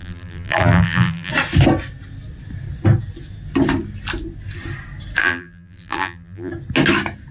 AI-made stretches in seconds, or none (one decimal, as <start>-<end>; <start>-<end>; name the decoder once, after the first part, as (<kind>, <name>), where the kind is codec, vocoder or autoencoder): 0.0-1.3 (vocoder, BigVGAN v2); 5.2-6.5